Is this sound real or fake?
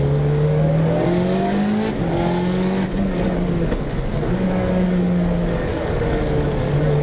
fake